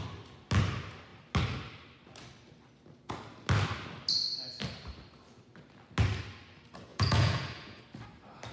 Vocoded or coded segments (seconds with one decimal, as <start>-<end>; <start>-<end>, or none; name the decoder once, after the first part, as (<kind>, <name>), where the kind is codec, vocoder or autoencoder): 6.9-7.8 (vocoder, Vocos)